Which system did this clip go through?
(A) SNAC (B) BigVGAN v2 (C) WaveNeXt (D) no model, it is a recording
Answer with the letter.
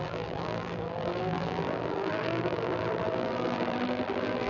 B